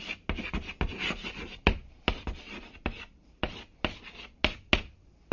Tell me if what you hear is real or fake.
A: real